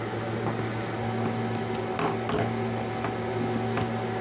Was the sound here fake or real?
real